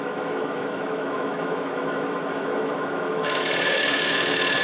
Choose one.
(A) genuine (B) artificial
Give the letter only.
B